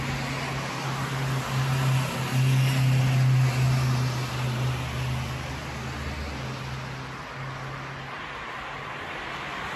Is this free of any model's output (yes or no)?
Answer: yes